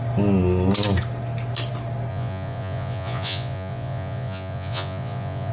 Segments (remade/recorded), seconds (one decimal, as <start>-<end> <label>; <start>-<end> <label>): 0.0-2.1 recorded; 2.1-5.5 remade